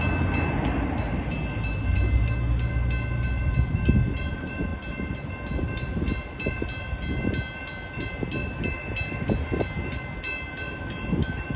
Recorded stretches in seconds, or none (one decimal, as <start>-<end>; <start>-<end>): 0.0-11.6